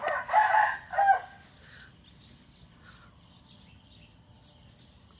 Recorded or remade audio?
recorded